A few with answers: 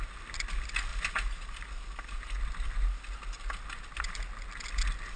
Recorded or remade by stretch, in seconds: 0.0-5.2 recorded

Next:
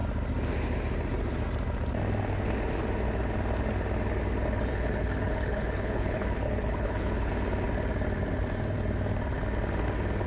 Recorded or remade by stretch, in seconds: 0.0-4.7 recorded; 4.7-7.3 remade; 7.3-10.3 recorded

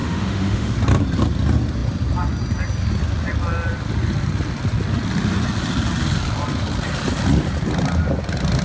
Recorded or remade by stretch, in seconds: 0.0-0.7 remade; 0.7-8.6 recorded

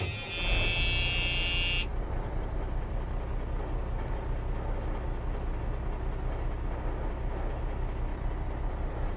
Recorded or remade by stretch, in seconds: 0.0-1.9 recorded; 1.9-2.9 remade; 2.9-8.1 recorded; 8.1-9.2 remade